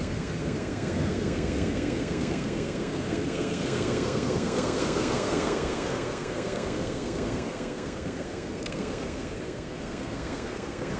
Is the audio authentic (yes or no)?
no